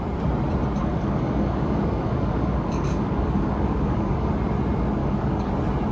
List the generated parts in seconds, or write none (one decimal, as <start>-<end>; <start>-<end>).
0.8-4.3; 5.0-5.5